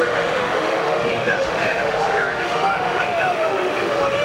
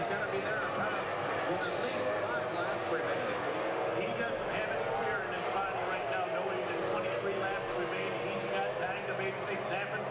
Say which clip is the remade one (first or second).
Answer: first